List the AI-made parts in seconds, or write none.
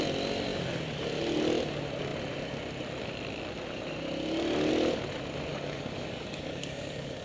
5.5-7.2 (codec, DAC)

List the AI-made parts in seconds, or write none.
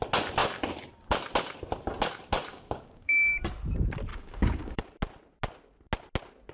2.5-3.3 (codec, DAC); 4.1-4.8